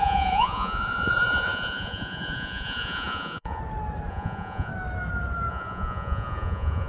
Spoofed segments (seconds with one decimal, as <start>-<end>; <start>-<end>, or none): 0.0-3.6; 4.1-4.7; 5.5-6.9